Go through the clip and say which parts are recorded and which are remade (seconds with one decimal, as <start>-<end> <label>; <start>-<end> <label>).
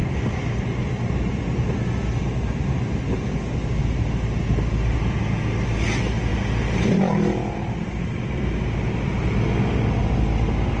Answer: 0.0-10.8 recorded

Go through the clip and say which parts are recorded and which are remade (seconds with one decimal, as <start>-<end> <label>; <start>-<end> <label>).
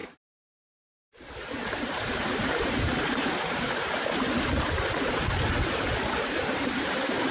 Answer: 0.0-4.4 remade; 4.4-7.3 recorded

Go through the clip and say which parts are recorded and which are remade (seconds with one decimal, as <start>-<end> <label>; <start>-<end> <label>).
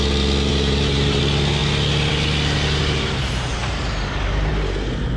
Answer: 0.0-0.5 recorded; 0.5-1.2 remade; 1.2-2.8 recorded; 2.8-4.5 remade; 4.5-5.2 recorded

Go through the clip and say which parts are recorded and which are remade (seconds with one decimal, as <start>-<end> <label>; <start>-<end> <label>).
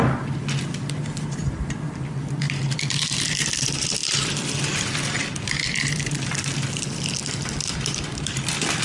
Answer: 0.0-8.8 remade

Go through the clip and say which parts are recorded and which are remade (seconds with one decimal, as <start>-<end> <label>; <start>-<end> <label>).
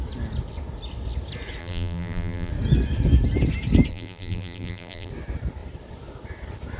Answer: 0.0-1.6 recorded; 1.6-2.5 remade; 2.5-3.9 recorded; 3.9-5.1 remade; 5.1-6.8 recorded